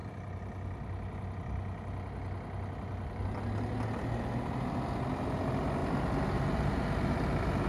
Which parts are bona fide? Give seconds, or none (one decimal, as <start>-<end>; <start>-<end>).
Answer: 0.0-7.7